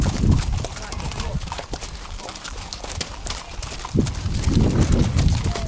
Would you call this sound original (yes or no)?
yes